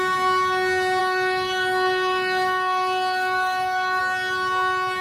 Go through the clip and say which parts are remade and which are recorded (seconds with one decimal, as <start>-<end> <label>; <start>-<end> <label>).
0.0-1.0 recorded; 1.0-4.0 remade; 4.0-5.0 recorded